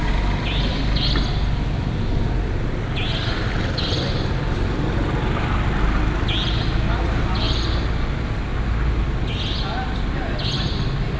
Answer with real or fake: real